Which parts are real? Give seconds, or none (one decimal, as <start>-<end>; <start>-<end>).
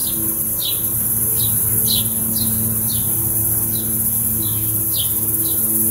0.0-5.9